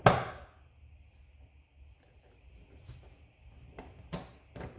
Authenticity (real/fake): real